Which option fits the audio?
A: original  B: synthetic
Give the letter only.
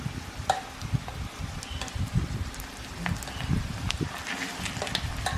A